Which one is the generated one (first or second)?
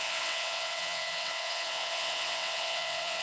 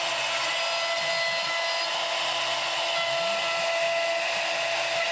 first